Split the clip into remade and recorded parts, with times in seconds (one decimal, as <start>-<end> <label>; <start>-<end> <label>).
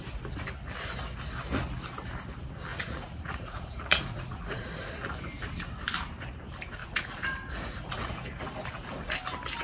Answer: 0.0-2.7 recorded; 2.7-4.9 remade; 4.9-6.8 recorded; 6.8-8.1 remade; 8.1-9.6 recorded